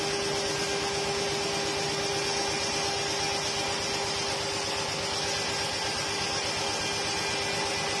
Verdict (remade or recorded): recorded